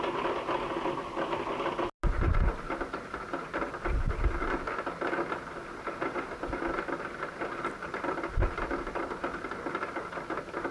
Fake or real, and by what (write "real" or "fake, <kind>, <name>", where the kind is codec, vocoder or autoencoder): real